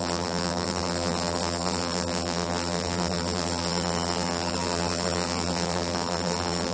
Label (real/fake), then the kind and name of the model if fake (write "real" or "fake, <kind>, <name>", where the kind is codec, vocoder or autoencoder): fake, vocoder, BigVGAN v2